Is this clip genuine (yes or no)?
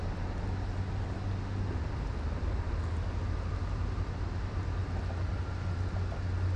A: yes